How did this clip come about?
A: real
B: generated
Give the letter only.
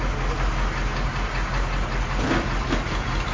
A